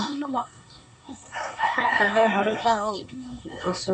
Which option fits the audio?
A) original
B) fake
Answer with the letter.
B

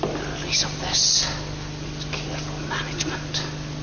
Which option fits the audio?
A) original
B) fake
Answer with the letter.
A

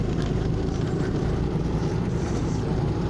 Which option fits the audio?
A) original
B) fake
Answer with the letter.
B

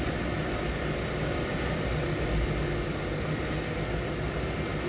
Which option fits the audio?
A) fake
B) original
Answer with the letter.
B